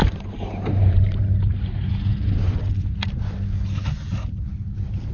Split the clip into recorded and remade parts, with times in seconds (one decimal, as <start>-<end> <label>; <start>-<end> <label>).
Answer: 0.0-1.2 remade; 1.2-2.1 recorded; 2.1-3.2 remade; 3.2-5.1 recorded